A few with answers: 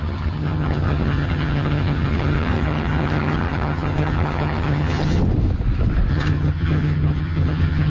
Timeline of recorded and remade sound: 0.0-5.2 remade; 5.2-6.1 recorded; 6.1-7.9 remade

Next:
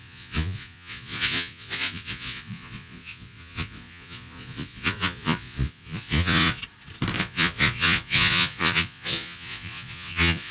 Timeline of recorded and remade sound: 0.0-6.6 remade; 6.6-7.2 recorded; 7.2-10.5 remade

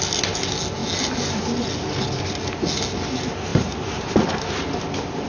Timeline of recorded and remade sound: 0.0-3.5 recorded; 3.5-4.1 remade; 4.1-5.3 recorded

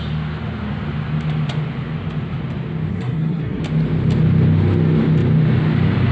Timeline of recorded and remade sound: 0.0-2.9 recorded; 2.9-3.6 remade; 3.6-6.1 recorded

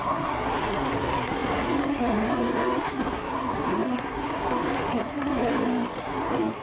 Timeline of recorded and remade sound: 0.0-5.5 remade; 5.5-6.0 recorded; 6.0-6.6 remade

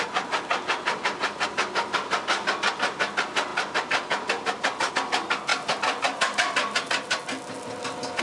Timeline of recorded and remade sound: 0.0-8.2 recorded

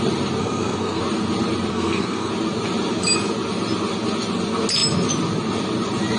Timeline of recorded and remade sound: 0.0-0.4 recorded; 0.4-1.0 remade; 1.0-1.7 recorded; 1.7-2.3 remade; 2.3-6.2 recorded

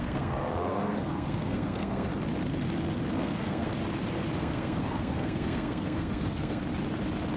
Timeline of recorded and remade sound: 0.0-2.1 remade; 2.1-3.1 recorded; 3.1-3.7 remade; 3.7-4.4 recorded; 4.4-6.6 remade; 6.6-7.4 recorded